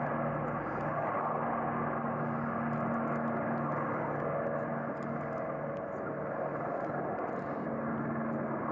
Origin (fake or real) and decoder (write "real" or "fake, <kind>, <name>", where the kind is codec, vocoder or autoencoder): real